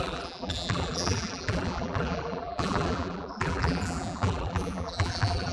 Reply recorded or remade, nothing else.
remade